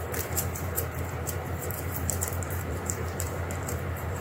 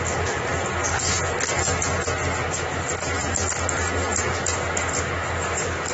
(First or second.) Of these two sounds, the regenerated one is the first